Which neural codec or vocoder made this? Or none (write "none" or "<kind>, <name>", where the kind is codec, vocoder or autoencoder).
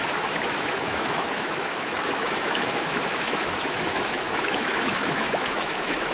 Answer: autoencoder, DAC-VAE